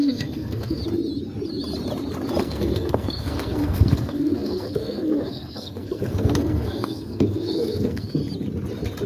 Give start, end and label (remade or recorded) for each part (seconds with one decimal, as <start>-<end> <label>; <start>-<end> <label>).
0.0-0.8 remade; 0.8-2.4 recorded; 2.4-8.2 remade; 8.2-9.1 recorded